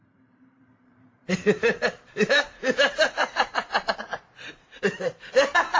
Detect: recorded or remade remade